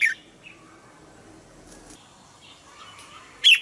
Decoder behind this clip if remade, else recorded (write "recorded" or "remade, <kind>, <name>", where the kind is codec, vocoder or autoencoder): recorded